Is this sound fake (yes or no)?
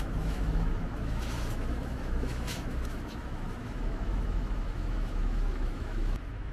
yes